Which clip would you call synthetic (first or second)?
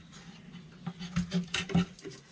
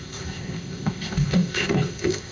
second